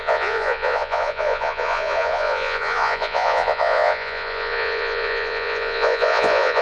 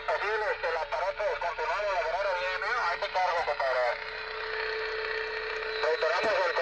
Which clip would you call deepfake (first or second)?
first